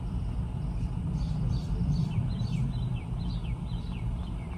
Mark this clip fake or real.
fake